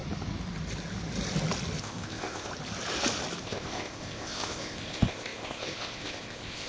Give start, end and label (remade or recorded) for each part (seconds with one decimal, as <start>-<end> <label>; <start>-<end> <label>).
0.0-1.8 recorded; 1.8-2.5 remade; 2.5-3.4 recorded; 3.4-6.7 remade